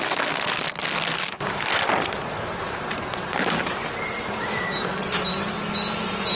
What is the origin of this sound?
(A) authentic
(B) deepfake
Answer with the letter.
A